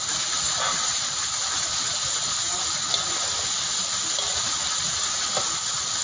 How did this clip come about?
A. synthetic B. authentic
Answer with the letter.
B